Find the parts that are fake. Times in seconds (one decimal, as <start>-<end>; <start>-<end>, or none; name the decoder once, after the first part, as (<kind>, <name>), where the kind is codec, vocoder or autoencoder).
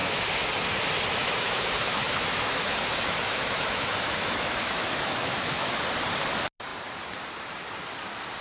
0.0-0.5 (autoencoder, DAC-VAE); 1.2-5.8